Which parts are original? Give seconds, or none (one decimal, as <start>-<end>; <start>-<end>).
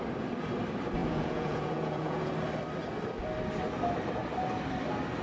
0.0-1.0; 2.3-5.2